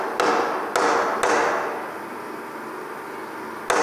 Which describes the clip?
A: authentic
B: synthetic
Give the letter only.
A